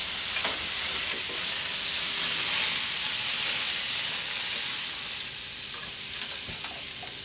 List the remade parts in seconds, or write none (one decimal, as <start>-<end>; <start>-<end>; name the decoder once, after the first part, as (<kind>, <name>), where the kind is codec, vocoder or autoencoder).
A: none